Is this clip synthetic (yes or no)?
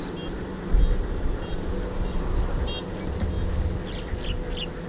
no